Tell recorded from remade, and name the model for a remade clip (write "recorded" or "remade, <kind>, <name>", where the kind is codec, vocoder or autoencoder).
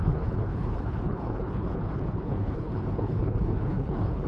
remade, codec, HILCodec